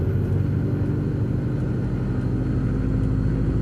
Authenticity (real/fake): real